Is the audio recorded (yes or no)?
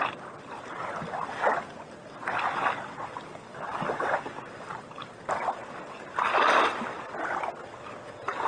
yes